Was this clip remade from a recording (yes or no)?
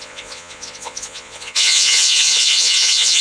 yes